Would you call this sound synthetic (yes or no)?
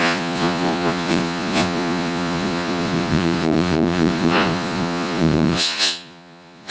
yes